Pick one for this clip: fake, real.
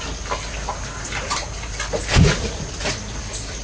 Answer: real